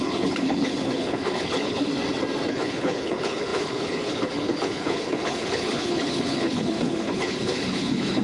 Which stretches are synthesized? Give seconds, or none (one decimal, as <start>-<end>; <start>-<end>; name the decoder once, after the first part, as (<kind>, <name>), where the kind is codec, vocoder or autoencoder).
0.0-1.9 (codec, HILCodec); 2.5-8.2